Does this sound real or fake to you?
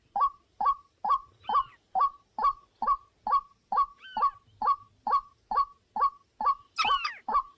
real